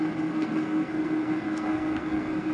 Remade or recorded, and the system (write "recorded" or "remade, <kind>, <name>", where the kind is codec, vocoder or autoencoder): remade, codec, SNAC